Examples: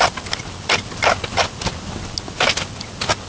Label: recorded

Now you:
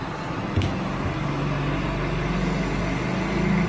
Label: recorded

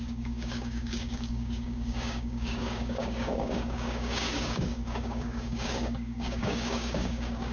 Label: remade